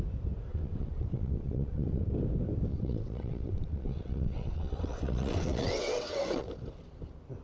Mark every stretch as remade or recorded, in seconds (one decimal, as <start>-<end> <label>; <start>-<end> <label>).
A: 0.0-0.5 recorded; 0.5-2.0 remade; 2.0-2.7 recorded; 2.7-6.5 remade; 6.5-7.4 recorded